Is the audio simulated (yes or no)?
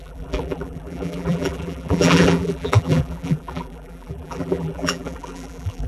yes